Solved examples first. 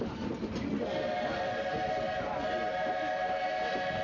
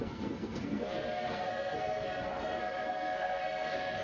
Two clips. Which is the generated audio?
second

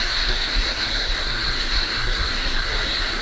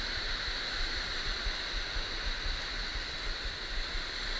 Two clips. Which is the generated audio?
first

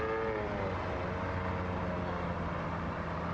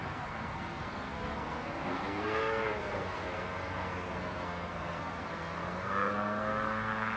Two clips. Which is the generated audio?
second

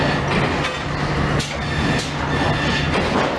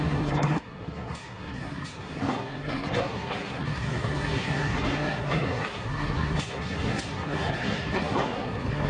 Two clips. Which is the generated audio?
second